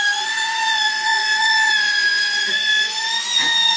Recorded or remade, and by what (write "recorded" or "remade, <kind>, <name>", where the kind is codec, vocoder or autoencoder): remade, vocoder, Vocos